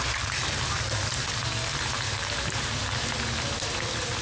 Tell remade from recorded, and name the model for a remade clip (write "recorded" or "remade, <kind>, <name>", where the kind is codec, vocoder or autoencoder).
recorded